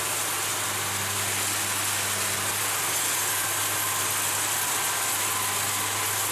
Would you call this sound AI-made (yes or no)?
no